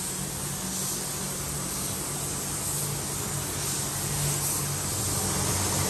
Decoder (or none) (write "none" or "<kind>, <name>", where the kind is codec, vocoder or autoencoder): none